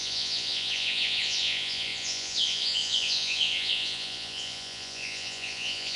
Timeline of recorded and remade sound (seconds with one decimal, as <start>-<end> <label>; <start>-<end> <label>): 0.0-6.0 remade